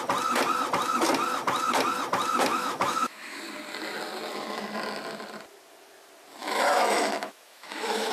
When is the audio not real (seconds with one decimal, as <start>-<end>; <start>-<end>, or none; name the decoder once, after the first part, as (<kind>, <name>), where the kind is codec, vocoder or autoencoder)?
2.5-3.4 (autoencoder, DAC-VAE); 6.4-8.1